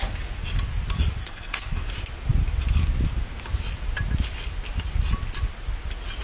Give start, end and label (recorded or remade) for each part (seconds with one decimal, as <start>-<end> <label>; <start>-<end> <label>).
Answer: 0.0-1.2 recorded; 1.2-1.9 remade; 1.9-6.2 recorded